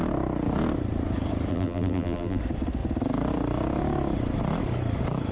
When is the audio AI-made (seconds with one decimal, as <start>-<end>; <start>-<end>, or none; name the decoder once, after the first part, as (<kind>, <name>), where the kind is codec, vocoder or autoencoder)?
1.5-2.4 (vocoder, BigVGAN v2)